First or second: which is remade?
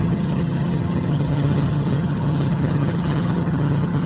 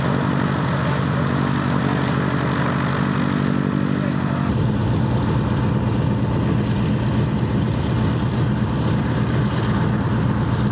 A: first